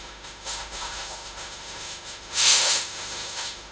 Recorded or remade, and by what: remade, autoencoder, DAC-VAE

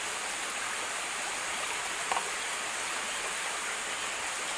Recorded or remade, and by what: recorded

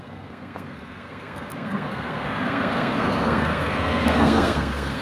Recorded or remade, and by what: remade, codec, SNAC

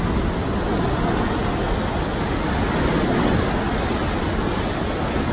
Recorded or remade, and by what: recorded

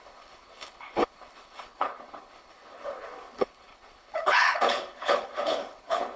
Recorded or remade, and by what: remade, codec, HILCodec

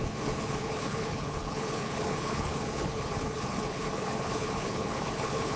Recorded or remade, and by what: remade, codec, HILCodec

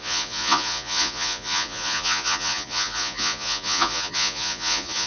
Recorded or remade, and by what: remade, vocoder, Vocos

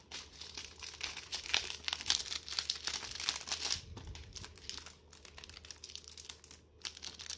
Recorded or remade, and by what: recorded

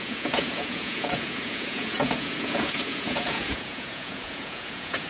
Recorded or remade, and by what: remade, vocoder, Vocos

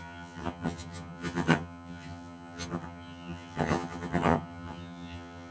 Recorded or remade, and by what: remade, vocoder, HiFi-GAN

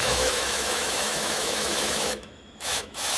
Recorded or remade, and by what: remade, autoencoder, DAC-VAE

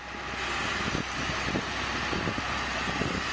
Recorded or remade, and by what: recorded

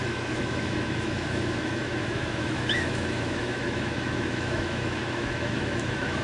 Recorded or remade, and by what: remade, autoencoder, DAC-VAE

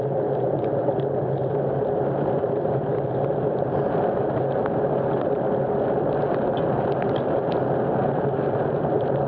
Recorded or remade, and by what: recorded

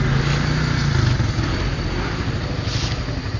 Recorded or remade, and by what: recorded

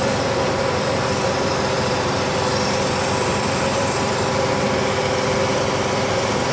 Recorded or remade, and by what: remade, vocoder, BigVGAN v2